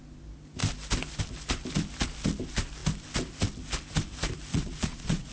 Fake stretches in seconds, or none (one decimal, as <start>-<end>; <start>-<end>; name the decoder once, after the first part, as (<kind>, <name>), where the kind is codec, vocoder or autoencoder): 4.5-5.3 (vocoder, Vocos)